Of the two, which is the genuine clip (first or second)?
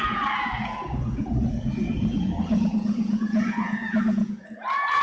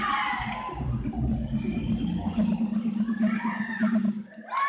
second